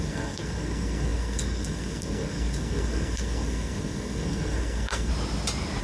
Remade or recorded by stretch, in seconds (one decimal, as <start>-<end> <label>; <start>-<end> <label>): 0.0-5.1 remade; 5.1-5.8 recorded